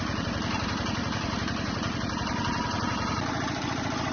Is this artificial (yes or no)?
yes